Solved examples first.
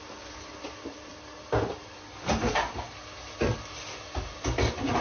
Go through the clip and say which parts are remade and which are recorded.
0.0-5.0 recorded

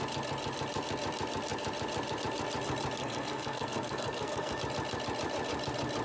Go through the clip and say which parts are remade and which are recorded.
0.0-3.0 recorded; 3.0-4.6 remade; 4.6-6.0 recorded

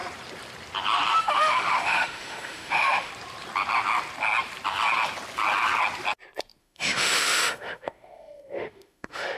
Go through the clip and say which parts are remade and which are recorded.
0.0-1.2 recorded; 1.2-3.1 remade; 3.1-6.6 recorded; 6.6-9.4 remade

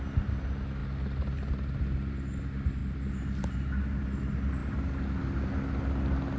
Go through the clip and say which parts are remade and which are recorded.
0.0-2.8 recorded; 2.8-3.4 remade; 3.4-6.4 recorded